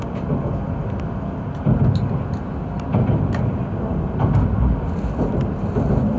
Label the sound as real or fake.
real